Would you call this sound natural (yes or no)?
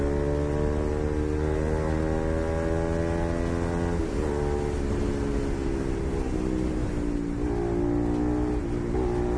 yes